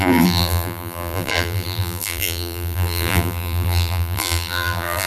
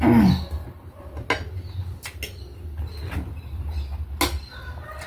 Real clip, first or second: second